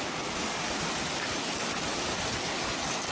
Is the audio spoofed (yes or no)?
no